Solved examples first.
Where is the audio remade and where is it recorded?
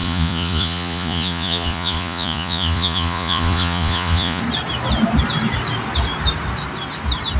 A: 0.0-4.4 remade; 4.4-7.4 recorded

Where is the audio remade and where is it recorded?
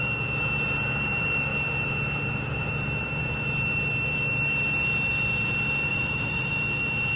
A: 0.0-5.9 recorded; 5.9-6.5 remade; 6.5-7.2 recorded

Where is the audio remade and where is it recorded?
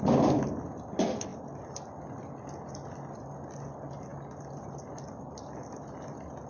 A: 0.0-6.5 recorded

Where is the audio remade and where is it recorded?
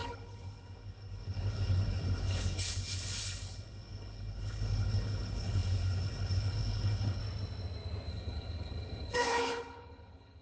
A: 0.0-7.2 remade; 7.2-8.1 recorded; 8.1-10.4 remade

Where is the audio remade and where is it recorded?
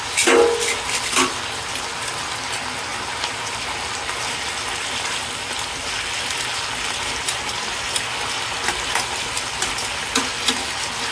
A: 0.0-11.1 recorded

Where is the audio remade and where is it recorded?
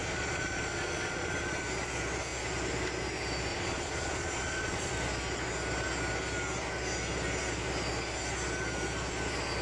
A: 0.0-1.6 remade; 1.6-3.5 recorded; 3.5-4.9 remade; 4.9-9.6 recorded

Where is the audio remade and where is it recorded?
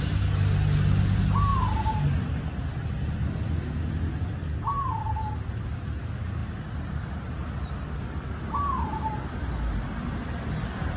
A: 0.0-11.0 recorded